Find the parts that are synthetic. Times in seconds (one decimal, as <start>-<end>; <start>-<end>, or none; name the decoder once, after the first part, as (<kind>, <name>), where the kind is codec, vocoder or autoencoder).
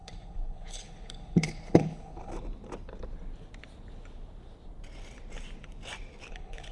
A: 0.0-2.3 (codec, HILCodec); 6.3-6.7